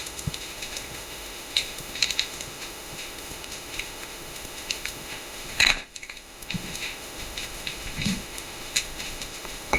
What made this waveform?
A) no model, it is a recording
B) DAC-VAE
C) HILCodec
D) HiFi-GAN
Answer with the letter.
B